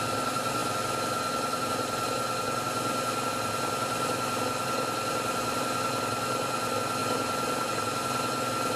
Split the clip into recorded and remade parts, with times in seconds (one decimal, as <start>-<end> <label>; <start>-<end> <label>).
0.0-8.8 recorded